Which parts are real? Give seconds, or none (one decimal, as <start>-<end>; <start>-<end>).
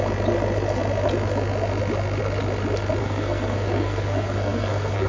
0.0-3.0